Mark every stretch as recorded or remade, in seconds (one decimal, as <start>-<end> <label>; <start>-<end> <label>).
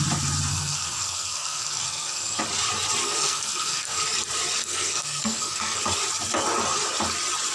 0.0-0.5 recorded; 0.5-2.4 remade; 2.4-3.0 recorded; 3.0-4.0 remade; 4.0-4.6 recorded; 4.6-5.8 remade; 5.8-7.5 recorded